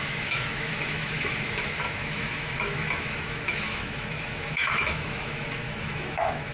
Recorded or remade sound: remade